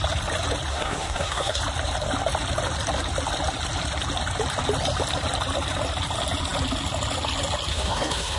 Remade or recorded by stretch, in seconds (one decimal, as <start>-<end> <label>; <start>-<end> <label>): 0.0-0.7 recorded; 0.7-1.6 remade; 1.6-7.7 recorded; 7.7-8.4 remade